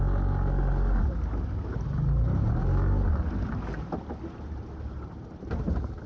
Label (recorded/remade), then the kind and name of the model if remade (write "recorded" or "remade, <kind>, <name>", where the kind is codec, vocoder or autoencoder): recorded